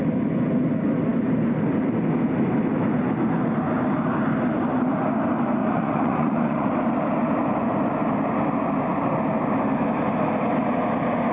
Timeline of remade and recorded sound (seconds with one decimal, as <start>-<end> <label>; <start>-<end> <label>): 0.0-5.6 recorded; 5.6-6.7 remade; 6.7-11.3 recorded

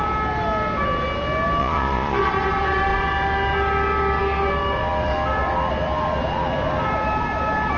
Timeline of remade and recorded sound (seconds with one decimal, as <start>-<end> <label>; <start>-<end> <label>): 0.0-1.6 recorded; 1.6-2.3 remade; 2.3-7.8 recorded

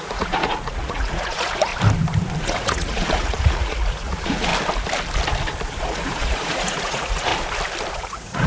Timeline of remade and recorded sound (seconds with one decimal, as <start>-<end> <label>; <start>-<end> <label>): 0.0-1.7 remade; 1.7-2.4 recorded; 2.4-4.5 remade; 4.5-5.8 recorded; 5.8-7.3 remade; 7.3-7.9 recorded; 7.9-8.5 remade

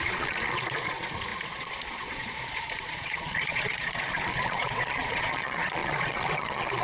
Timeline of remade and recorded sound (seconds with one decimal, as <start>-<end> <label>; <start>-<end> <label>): 0.0-6.8 remade

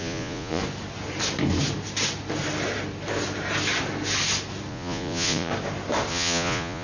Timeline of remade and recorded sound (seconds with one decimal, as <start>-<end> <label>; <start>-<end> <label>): 0.0-0.6 remade; 0.6-4.7 recorded; 4.7-5.5 remade; 5.5-6.1 recorded; 6.1-6.8 remade

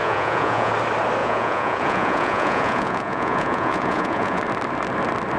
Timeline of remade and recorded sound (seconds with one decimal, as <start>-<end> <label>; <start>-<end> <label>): 0.0-0.7 remade; 0.7-1.2 recorded; 1.2-4.4 remade; 4.4-5.4 recorded

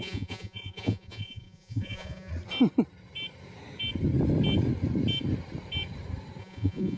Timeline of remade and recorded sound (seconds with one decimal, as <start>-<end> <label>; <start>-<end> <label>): 0.0-2.3 remade; 2.3-6.4 recorded; 6.4-7.0 remade

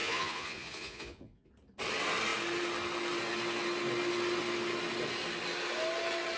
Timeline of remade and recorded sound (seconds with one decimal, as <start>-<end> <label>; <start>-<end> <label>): 0.0-1.5 remade; 1.5-6.4 recorded